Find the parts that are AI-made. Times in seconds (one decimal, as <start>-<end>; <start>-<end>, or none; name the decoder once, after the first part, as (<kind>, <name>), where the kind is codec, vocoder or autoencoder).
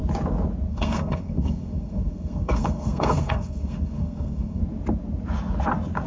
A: 0.7-4.6 (codec, SNAC)